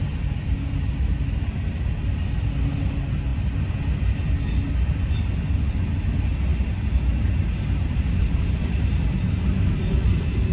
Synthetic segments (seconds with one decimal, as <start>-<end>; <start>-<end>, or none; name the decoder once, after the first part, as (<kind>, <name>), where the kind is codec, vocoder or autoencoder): none